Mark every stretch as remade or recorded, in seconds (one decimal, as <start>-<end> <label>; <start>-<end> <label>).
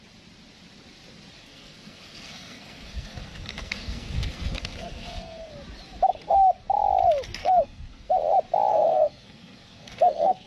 0.0-1.4 recorded; 1.4-5.5 remade; 5.5-7.4 recorded; 7.4-8.1 remade; 8.1-8.7 recorded; 8.7-10.5 remade